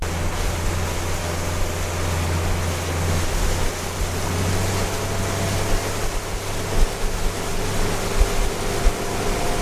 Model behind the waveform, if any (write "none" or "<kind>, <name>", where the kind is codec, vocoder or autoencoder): none